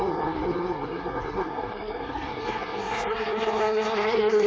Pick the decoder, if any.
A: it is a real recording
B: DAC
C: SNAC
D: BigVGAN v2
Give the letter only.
C